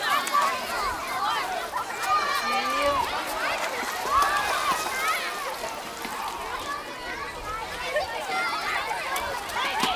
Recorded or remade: recorded